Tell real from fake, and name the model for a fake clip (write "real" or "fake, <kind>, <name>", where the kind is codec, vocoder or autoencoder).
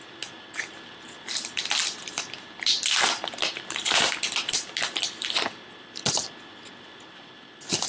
real